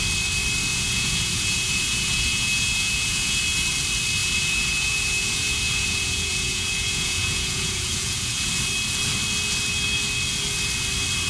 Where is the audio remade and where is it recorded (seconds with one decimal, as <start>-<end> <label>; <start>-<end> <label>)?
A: 0.0-0.7 recorded; 0.7-3.4 remade; 3.4-4.2 recorded; 4.2-8.5 remade; 8.5-11.3 recorded